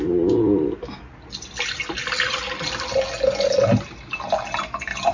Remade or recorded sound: recorded